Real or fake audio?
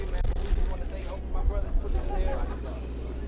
real